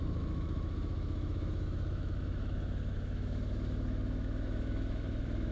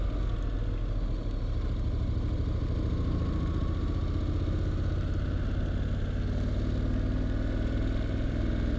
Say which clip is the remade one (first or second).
first